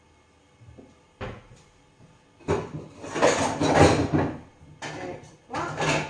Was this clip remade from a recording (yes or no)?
no